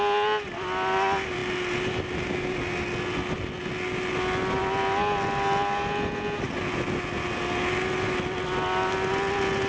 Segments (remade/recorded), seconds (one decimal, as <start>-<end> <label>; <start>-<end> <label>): 0.0-9.7 recorded